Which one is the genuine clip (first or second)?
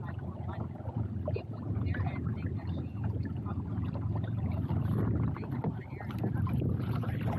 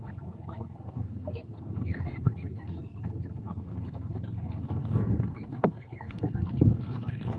first